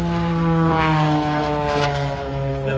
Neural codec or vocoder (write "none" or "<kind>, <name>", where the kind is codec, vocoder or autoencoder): codec, SNAC